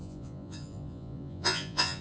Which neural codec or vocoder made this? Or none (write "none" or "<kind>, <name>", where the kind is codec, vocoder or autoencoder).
vocoder, Vocos